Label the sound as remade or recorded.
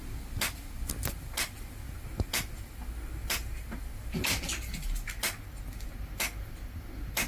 recorded